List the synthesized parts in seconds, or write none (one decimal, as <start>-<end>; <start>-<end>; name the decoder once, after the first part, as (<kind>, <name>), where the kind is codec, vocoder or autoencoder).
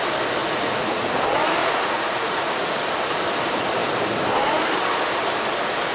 0.4-1.1 (vocoder, Vocos); 1.6-2.7